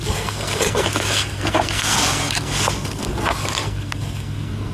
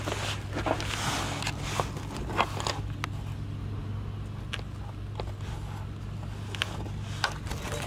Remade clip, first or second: first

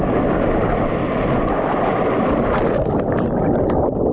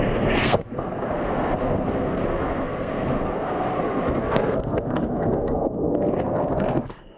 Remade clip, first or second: second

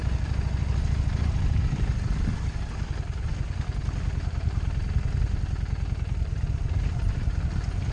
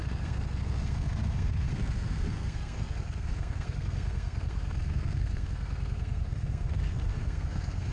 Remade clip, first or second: second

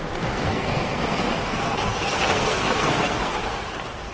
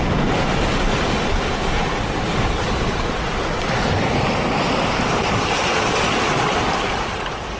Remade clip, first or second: first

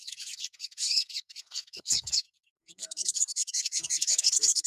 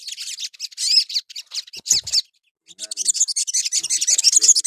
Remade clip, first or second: first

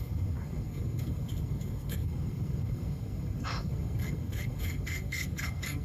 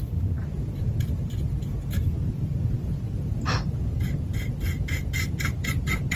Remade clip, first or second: first